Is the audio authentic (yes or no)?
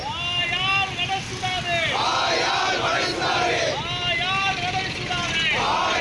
yes